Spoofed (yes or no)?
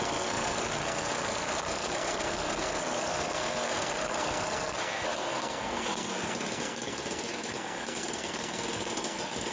yes